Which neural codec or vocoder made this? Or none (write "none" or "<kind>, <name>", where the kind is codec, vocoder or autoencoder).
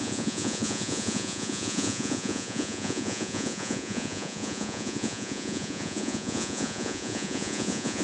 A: vocoder, Vocos